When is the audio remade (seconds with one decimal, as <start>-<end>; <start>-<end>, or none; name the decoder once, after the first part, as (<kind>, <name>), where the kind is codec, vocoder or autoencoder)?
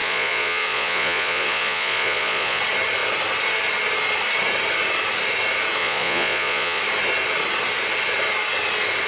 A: 0.0-2.6 (vocoder, Vocos); 5.8-6.8